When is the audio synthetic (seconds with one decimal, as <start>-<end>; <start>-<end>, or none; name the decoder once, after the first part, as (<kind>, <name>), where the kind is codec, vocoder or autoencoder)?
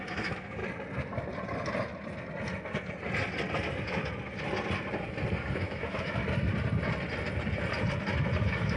0.0-0.6 (autoencoder, DAC-VAE); 5.5-6.2; 8.4-8.8